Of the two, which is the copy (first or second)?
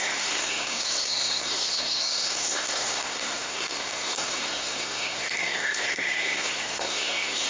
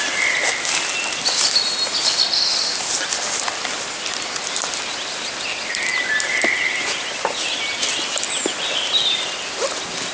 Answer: first